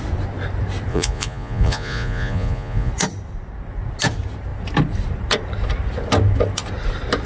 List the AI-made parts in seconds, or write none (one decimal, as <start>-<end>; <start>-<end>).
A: 0.9-2.9